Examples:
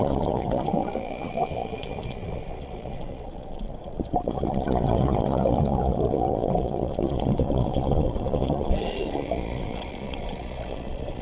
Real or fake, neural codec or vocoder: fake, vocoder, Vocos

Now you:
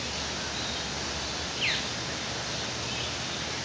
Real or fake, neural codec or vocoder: real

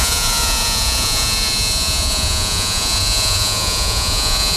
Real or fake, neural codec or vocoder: fake, vocoder, Vocos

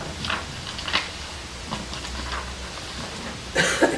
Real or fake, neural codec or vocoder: real